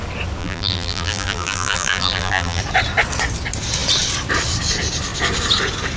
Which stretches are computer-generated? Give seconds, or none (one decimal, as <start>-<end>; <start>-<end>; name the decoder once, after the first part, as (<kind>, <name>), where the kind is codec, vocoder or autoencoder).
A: 0.4-2.6 (vocoder, BigVGAN v2)